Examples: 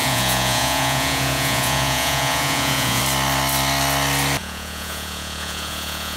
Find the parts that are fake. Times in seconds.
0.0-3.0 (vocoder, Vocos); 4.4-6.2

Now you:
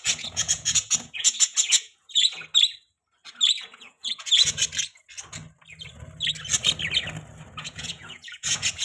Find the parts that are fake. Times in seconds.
0.0-2.4 (vocoder, Vocos); 3.6-4.6; 7.6-8.8

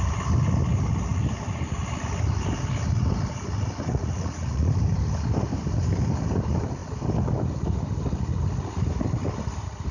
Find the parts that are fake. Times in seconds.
3.9-4.7 (vocoder, Vocos)

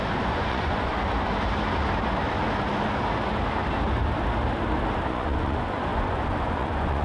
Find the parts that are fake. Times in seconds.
0.0-0.9 (vocoder, Vocos); 5.1-7.0

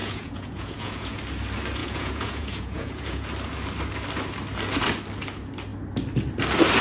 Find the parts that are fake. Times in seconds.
0.0-1.2 (vocoder, Vocos); 1.8-3.3

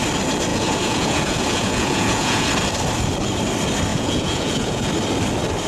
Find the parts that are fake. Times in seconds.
0.5-2.5 (vocoder, Vocos); 3.9-4.9